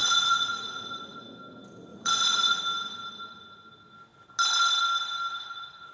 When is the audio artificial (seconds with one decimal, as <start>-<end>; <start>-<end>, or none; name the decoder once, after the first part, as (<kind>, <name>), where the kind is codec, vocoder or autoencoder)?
0.0-1.2 (vocoder, Vocos); 1.9-2.6; 5.3-5.9